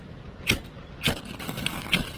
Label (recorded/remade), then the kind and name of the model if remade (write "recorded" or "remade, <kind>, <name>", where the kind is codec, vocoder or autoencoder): recorded